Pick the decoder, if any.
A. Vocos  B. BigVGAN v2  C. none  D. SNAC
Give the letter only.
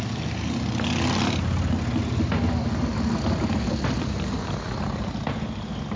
C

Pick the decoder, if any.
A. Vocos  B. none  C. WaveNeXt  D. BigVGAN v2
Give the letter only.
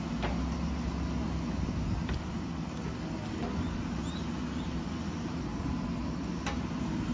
B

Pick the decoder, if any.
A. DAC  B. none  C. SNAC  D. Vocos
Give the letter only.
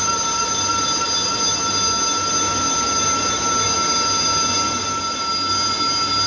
B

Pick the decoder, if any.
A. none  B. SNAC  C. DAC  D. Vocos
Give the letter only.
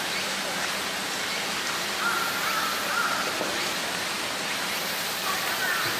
A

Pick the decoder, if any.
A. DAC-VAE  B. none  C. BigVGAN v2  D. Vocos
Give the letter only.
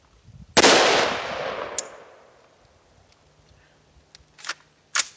B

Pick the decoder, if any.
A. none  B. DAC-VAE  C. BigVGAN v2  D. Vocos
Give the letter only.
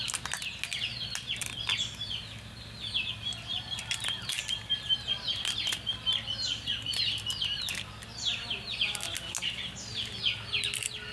A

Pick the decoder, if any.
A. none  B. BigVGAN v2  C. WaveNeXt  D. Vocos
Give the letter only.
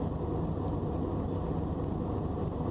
A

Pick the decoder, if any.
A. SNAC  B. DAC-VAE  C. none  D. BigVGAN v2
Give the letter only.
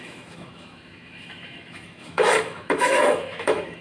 B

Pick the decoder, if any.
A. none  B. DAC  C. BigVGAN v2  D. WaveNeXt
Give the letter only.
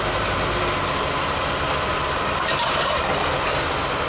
A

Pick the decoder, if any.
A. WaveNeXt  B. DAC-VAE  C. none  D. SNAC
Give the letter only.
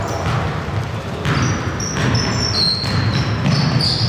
C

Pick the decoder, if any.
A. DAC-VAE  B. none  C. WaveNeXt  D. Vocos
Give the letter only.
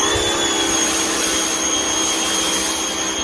B